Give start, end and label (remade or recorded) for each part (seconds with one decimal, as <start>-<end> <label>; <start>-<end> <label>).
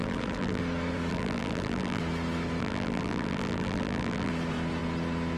0.0-0.6 remade; 0.6-1.1 recorded; 1.1-2.0 remade; 2.0-2.6 recorded; 2.6-4.3 remade; 4.3-5.4 recorded